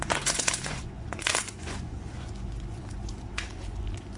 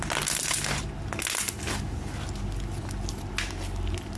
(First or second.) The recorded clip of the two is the second